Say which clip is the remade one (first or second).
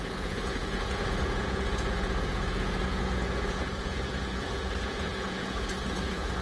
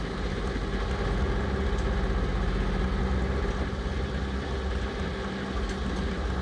first